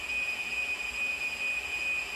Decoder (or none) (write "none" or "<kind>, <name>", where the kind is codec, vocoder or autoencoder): none